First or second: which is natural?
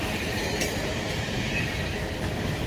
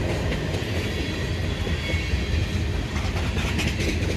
second